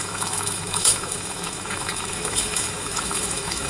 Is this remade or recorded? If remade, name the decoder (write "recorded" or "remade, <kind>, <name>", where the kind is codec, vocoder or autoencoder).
remade, autoencoder, DAC-VAE